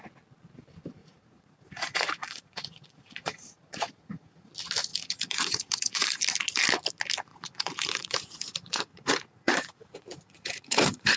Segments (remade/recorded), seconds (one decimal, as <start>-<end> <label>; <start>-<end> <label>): 0.0-1.0 recorded; 1.0-4.5 remade; 4.5-4.9 recorded; 4.9-6.2 remade; 6.2-7.3 recorded; 7.3-11.2 remade